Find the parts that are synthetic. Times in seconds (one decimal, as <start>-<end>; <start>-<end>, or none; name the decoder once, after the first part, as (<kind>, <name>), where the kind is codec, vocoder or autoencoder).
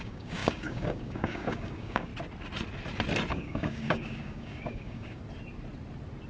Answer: 0.0-2.1 (codec, DAC); 3.3-5.2